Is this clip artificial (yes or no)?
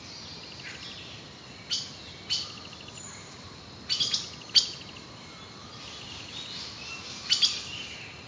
no